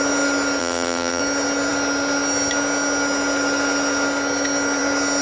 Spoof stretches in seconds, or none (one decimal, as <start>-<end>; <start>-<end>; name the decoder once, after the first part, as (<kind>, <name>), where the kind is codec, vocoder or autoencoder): 0.6-1.2 (vocoder, BigVGAN v2)